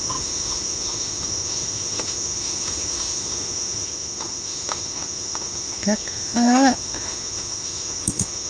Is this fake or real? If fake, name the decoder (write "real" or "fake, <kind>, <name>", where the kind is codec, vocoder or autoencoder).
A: fake, autoencoder, DAC-VAE